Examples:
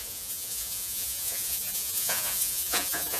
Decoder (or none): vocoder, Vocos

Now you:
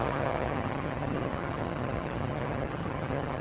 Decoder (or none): vocoder, HiFi-GAN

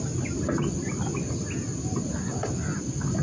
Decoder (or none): none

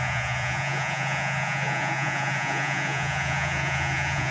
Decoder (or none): vocoder, Vocos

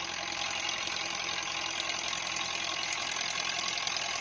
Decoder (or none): none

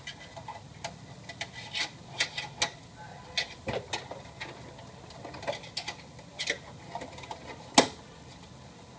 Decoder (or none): none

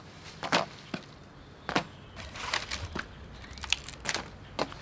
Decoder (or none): none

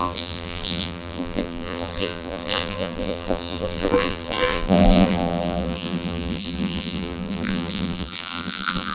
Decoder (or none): vocoder, BigVGAN v2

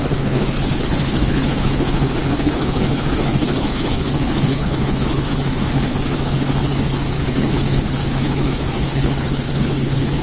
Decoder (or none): codec, HILCodec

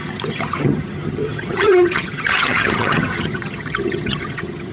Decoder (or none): vocoder, HiFi-GAN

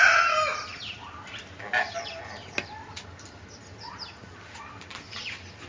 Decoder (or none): none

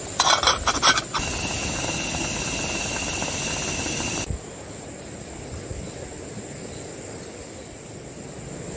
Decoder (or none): none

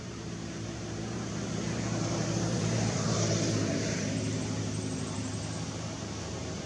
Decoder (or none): vocoder, BigVGAN v2